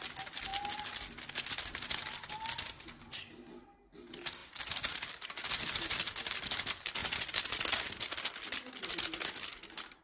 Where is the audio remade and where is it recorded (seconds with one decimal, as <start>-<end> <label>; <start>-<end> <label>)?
0.0-4.4 recorded; 4.4-5.1 remade; 5.1-10.0 recorded